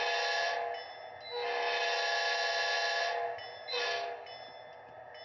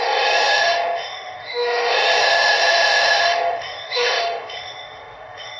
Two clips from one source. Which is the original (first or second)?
first